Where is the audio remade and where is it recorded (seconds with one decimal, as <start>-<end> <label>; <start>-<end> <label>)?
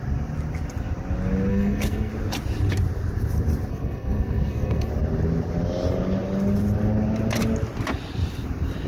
0.0-1.5 recorded; 1.5-2.1 remade; 2.1-3.7 recorded; 3.7-4.9 remade; 4.9-8.9 recorded